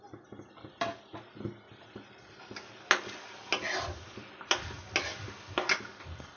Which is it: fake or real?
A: real